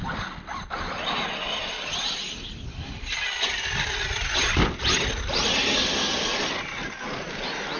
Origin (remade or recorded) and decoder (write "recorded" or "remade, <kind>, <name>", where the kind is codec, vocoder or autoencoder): recorded